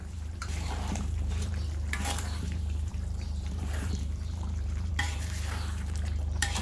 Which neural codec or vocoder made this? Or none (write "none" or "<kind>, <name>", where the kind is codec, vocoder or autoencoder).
vocoder, BigVGAN v2